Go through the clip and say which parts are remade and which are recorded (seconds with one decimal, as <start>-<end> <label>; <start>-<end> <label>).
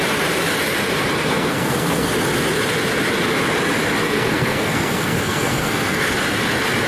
0.0-1.3 recorded; 1.3-2.1 remade; 2.1-4.0 recorded; 4.0-6.1 remade; 6.1-6.9 recorded